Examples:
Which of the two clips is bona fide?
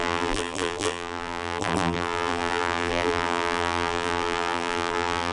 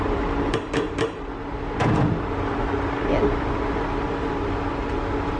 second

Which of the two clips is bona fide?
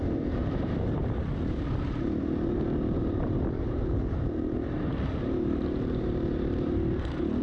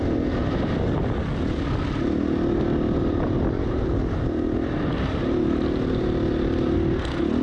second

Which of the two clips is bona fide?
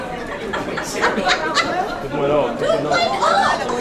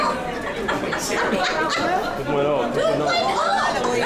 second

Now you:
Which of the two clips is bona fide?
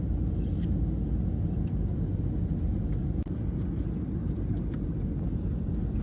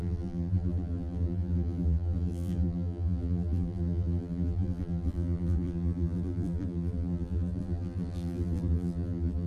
first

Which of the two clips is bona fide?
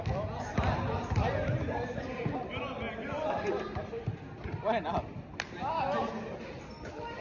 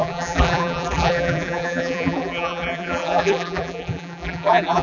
first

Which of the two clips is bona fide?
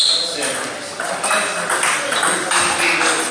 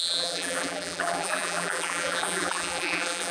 first